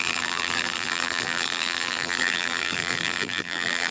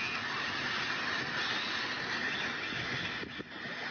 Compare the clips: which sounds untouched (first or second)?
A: second